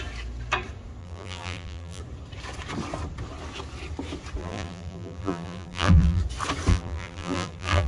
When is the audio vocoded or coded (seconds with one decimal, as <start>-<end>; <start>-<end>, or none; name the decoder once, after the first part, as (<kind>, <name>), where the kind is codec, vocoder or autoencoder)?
1.0-2.0 (vocoder, BigVGAN v2); 4.4-6.2; 6.7-7.9